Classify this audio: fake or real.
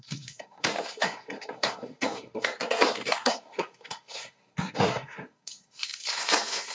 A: fake